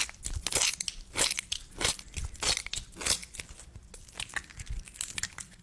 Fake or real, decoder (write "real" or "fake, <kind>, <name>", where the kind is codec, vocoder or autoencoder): real